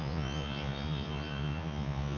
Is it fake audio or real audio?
fake